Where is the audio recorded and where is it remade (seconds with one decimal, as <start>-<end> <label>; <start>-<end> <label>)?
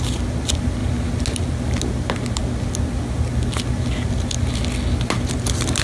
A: 0.0-5.8 recorded